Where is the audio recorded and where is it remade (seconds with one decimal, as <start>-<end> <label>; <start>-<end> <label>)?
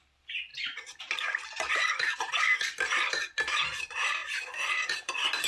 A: 0.0-5.5 recorded